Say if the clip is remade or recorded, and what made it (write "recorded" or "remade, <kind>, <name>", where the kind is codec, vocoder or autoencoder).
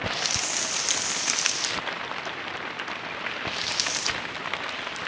recorded